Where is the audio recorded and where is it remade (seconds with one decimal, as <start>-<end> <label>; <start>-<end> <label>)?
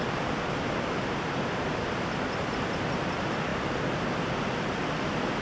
0.0-5.4 recorded